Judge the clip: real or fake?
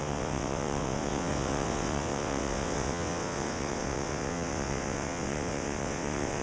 fake